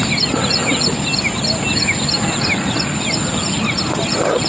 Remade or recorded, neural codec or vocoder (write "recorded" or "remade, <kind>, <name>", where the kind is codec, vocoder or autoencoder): recorded